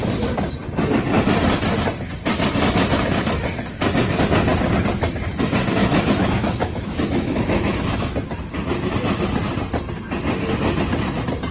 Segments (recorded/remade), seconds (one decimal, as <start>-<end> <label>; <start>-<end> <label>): 0.0-5.8 recorded; 5.8-7.8 remade; 7.8-11.5 recorded